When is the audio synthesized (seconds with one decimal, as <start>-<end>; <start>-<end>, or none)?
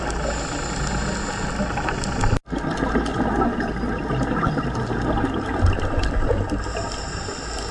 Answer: none